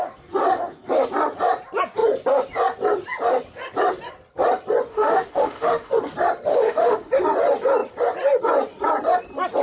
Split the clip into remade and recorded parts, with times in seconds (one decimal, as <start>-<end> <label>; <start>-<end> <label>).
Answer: 0.0-4.9 recorded; 4.9-5.9 remade; 5.9-6.5 recorded; 6.5-7.1 remade; 7.1-9.6 recorded

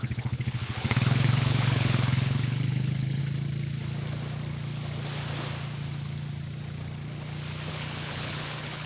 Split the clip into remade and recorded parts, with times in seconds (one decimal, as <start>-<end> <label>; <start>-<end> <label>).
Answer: 0.0-3.2 remade; 3.2-7.7 recorded; 7.7-8.9 remade

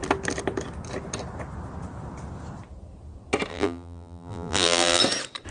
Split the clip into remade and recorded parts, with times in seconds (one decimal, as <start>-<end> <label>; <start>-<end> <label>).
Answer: 0.0-3.5 recorded; 3.5-5.0 remade; 5.0-5.5 recorded

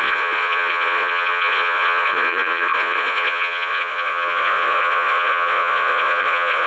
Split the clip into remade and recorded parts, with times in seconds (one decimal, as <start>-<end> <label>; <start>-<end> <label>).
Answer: 0.0-6.7 remade

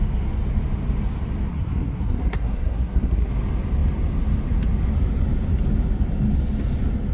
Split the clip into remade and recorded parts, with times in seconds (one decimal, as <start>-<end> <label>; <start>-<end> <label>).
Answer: 0.0-1.5 recorded; 1.5-3.3 remade; 3.3-7.1 recorded

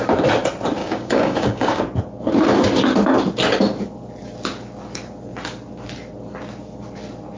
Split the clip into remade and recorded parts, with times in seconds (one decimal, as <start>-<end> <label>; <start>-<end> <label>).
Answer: 0.0-0.8 recorded; 0.8-1.8 remade; 1.8-7.4 recorded